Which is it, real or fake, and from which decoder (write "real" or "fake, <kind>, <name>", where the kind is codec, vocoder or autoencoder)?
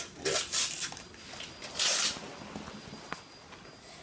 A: real